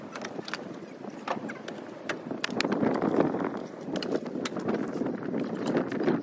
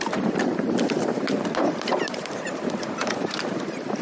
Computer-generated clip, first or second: second